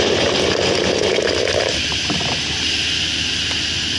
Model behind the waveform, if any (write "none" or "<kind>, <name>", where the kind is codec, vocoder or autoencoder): none